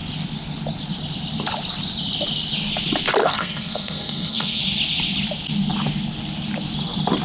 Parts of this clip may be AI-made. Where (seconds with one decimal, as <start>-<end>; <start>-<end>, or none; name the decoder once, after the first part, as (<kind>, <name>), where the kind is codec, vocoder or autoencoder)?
3.2-4.6 (codec, SNAC)